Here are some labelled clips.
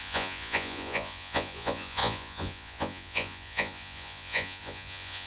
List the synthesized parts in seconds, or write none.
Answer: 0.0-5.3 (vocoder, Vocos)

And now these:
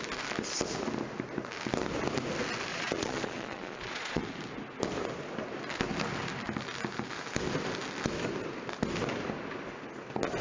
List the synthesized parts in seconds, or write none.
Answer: 2.7-4.2 (vocoder, Vocos)

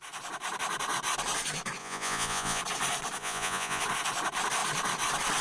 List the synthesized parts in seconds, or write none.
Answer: 1.8-2.6 (vocoder, Vocos); 3.2-3.8

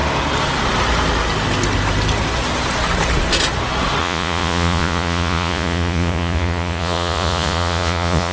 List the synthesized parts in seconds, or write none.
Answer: 4.0-8.3 (vocoder, Vocos)

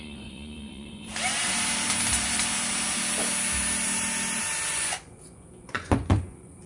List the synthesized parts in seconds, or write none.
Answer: 0.0-1.1 (vocoder, Vocos); 4.7-6.7